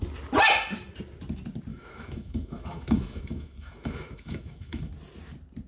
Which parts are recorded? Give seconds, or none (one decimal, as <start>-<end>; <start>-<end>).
0.0-1.7; 4.9-5.7